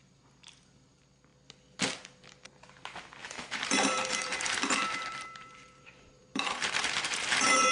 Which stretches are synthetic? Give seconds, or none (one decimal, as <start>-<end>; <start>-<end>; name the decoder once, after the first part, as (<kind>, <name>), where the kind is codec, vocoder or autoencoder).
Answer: 3.2-7.7 (vocoder, BigVGAN v2)